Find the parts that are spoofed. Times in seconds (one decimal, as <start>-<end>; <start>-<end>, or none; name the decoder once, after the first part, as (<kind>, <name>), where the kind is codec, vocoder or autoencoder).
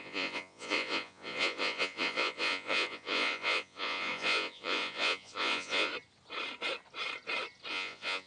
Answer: 0.0-5.9 (vocoder, Vocos); 7.7-8.3